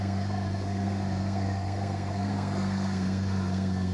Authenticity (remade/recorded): remade